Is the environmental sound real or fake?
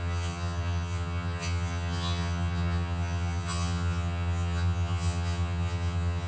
fake